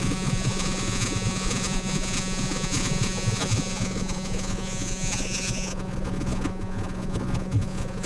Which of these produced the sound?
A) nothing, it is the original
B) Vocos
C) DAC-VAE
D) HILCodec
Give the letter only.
B